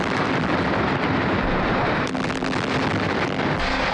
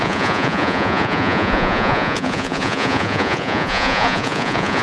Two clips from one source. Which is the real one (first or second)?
first